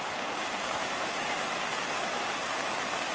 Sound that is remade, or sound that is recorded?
recorded